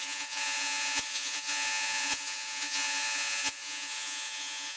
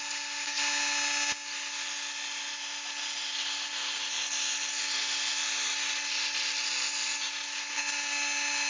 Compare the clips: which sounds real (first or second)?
second